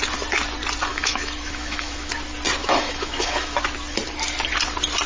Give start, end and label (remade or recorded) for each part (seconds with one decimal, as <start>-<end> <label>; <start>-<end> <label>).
0.0-0.9 recorded; 0.9-2.1 remade; 2.1-2.6 recorded; 2.6-3.6 remade; 3.6-5.1 recorded